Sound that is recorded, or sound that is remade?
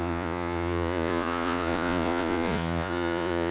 remade